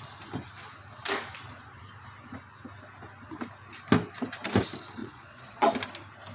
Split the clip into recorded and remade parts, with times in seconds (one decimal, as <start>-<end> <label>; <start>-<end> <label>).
0.0-5.0 recorded; 5.0-5.7 remade; 5.7-6.3 recorded